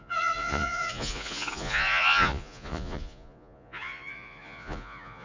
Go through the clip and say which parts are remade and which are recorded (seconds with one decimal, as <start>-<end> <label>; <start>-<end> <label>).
0.0-5.2 remade